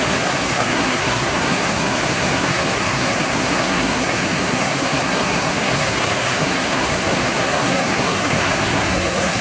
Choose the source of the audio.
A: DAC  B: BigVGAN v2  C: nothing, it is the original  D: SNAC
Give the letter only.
D